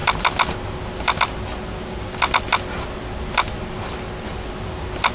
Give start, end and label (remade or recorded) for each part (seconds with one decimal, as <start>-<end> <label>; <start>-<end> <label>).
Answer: 0.0-5.1 recorded